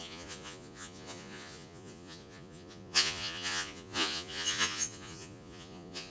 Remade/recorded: remade